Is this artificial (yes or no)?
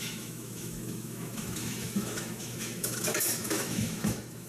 yes